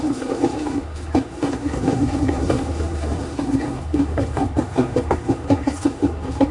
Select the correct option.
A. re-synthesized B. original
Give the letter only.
A